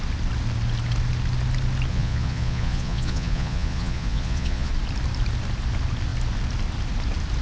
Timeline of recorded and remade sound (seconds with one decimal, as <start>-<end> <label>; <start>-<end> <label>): 0.0-1.9 recorded; 1.9-4.7 remade; 4.7-7.4 recorded